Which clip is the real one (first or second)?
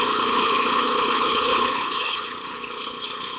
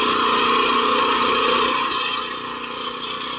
second